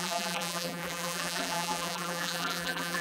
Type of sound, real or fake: fake